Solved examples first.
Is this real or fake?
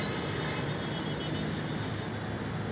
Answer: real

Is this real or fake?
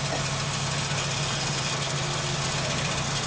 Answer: real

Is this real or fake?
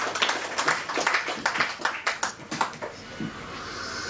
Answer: real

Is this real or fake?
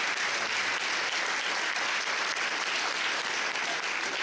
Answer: real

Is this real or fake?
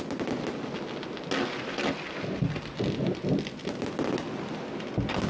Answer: real